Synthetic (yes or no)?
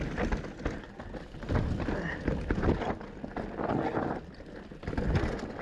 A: no